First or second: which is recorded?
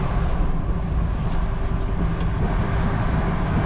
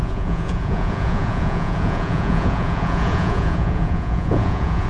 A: first